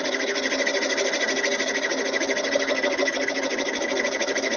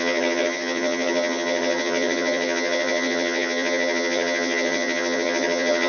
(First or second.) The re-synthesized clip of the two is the second